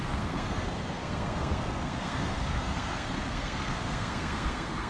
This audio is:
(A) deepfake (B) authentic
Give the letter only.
A